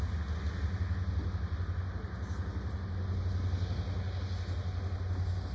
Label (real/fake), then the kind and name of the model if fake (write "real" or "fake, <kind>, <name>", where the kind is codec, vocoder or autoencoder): real